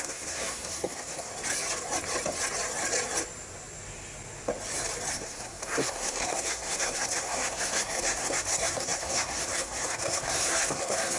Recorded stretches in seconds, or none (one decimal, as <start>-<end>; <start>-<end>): 1.3-5.1